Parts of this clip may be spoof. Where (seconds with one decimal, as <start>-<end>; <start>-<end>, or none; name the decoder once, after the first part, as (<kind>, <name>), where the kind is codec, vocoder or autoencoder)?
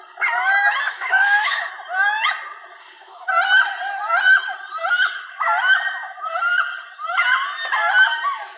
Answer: 0.9-1.7 (autoencoder, DAC-VAE); 2.8-3.3